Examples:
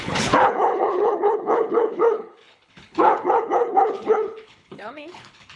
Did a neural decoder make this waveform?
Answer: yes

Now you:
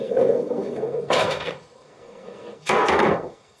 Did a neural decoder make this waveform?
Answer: yes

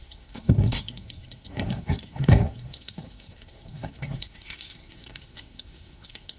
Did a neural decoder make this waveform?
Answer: yes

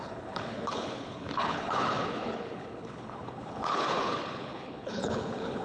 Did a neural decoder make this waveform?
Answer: yes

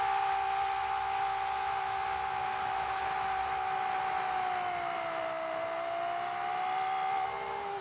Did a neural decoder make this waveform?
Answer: no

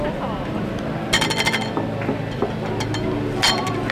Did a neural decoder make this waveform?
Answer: no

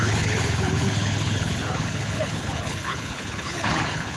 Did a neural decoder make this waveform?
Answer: yes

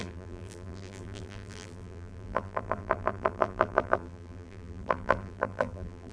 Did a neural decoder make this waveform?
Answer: yes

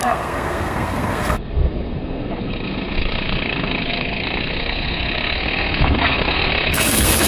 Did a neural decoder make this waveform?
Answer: yes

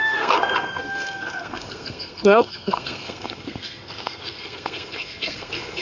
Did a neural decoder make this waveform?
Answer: yes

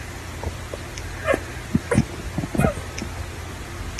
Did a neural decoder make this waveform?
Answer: no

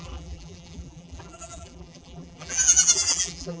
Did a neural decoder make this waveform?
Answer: yes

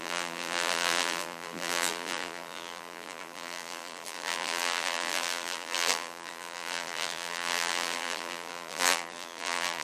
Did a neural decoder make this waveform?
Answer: yes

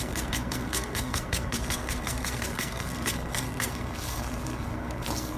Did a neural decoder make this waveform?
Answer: yes